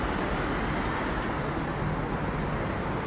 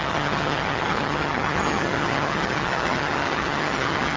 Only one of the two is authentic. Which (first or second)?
first